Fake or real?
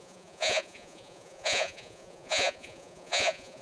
fake